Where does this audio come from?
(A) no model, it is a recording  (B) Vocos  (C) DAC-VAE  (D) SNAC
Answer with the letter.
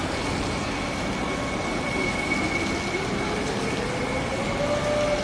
A